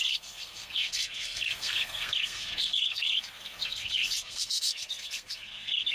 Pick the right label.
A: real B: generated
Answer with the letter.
B